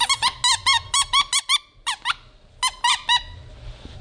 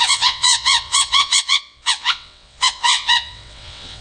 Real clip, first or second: first